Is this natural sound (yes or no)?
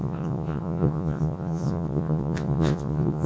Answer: no